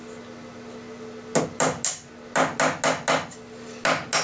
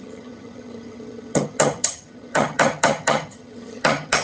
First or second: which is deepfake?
second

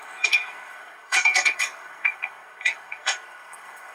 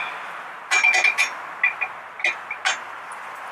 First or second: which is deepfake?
first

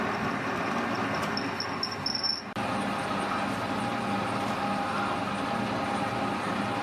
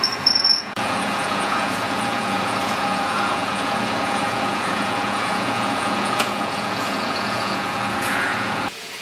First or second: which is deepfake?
second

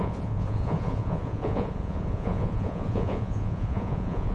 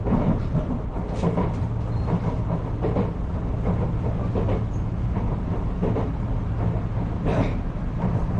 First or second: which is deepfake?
first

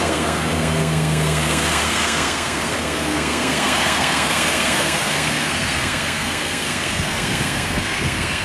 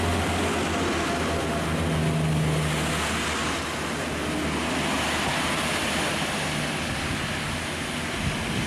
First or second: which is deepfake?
first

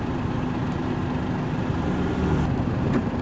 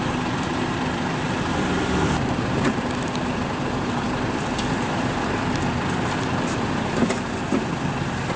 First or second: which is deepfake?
second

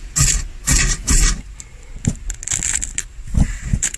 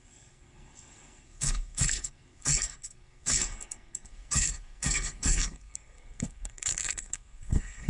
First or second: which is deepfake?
second